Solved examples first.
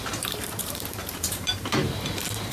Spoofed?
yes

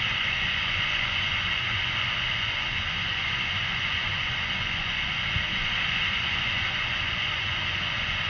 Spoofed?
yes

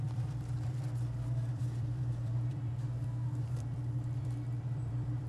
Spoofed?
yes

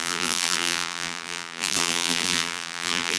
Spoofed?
yes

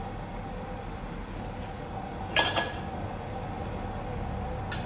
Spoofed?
no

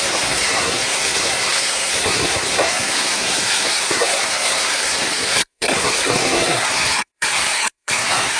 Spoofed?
yes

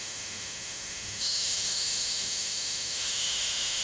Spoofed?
yes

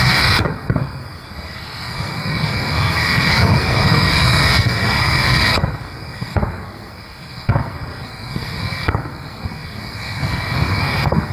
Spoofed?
yes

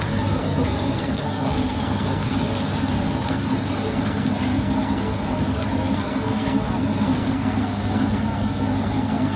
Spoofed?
yes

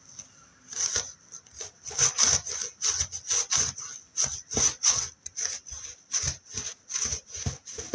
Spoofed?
no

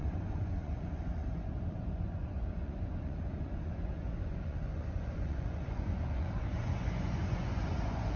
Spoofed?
yes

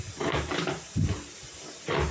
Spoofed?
yes